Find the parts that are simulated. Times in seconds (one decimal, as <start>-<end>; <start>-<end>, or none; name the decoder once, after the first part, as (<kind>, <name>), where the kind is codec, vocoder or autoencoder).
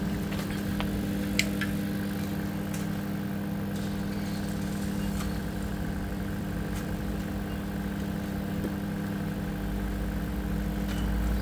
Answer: 5.4-7.1 (vocoder, BigVGAN v2)